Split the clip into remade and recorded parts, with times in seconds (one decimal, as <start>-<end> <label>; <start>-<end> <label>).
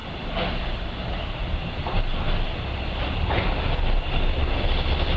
0.0-5.2 recorded